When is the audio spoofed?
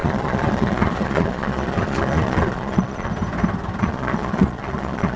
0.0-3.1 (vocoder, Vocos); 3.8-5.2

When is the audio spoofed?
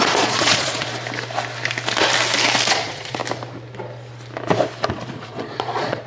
0.0-0.9 (vocoder, Vocos); 2.7-3.2; 4.9-6.1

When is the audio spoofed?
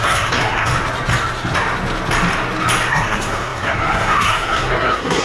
0.0-0.7 (codec, SNAC); 2.9-5.2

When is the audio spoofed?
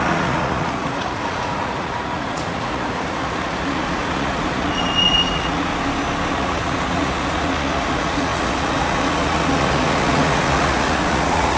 0.0-5.7 (vocoder, Vocos); 6.3-11.6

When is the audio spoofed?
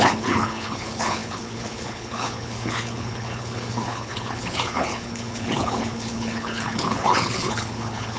0.0-8.2 (codec, HILCodec)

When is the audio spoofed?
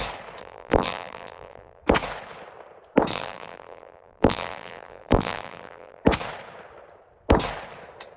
0.4-1.8 (vocoder, BigVGAN v2); 3.1-6.0